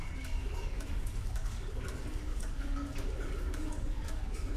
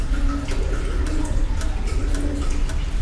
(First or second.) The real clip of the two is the second